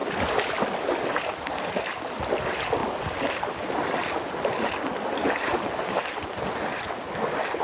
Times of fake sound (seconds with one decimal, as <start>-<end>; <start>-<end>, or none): none

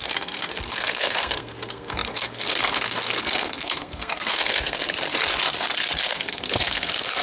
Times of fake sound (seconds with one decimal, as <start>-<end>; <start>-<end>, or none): 0.0-4.8; 6.0-7.2

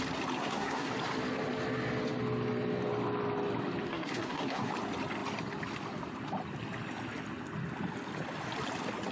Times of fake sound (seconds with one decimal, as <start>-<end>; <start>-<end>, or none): 0.4-0.9; 3.9-4.7

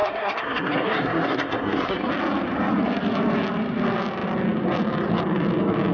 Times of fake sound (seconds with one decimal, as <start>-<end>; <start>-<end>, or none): 0.0-2.1

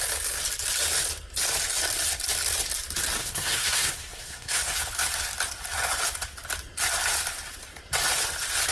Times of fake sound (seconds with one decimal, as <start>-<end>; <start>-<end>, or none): 3.2-4.7

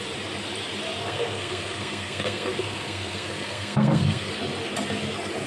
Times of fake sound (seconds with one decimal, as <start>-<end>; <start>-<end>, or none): 1.0-4.3

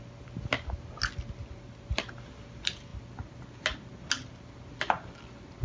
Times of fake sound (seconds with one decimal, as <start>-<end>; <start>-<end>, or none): none